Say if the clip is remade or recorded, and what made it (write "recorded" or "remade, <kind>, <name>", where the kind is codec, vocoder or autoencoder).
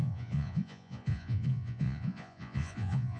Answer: remade, vocoder, Vocos